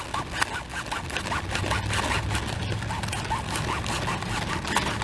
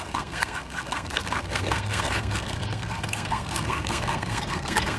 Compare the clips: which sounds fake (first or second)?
second